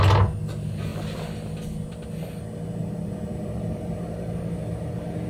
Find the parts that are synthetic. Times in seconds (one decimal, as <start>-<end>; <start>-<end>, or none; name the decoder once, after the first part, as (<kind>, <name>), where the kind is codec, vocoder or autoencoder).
2.8-5.3 (vocoder, BigVGAN v2)